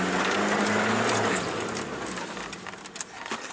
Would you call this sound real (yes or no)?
yes